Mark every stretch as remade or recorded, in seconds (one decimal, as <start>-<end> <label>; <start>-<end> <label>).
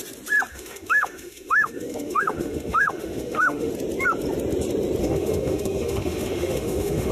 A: 0.0-0.5 recorded; 0.5-3.7 remade; 3.7-5.0 recorded; 5.0-7.1 remade